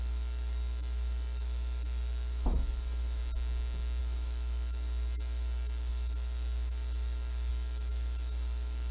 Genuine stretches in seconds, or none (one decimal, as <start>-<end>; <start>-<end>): 3.2-4.0

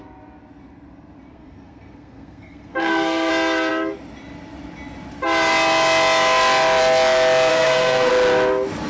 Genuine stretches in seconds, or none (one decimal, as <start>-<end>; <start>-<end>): 0.0-1.3; 3.3-7.5; 8.1-8.9

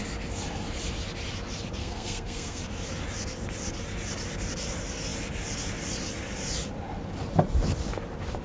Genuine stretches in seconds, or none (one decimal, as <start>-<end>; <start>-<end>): 0.0-1.8; 2.6-8.4

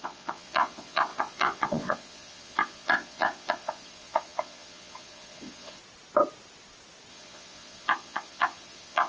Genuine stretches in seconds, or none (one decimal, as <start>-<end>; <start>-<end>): 5.8-7.1